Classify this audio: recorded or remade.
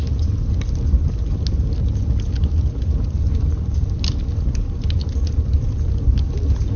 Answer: recorded